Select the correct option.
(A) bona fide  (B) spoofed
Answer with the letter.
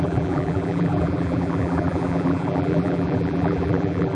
B